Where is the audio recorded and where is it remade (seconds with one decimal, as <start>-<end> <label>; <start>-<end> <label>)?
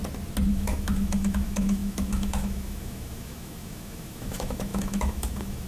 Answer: 0.0-0.5 recorded; 0.5-5.7 remade